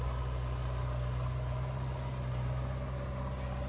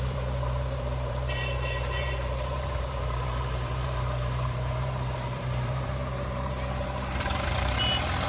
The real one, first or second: first